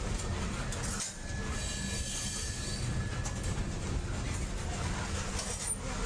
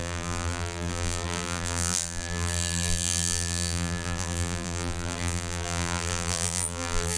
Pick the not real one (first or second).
second